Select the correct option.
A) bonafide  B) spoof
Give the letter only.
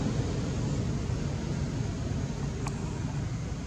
A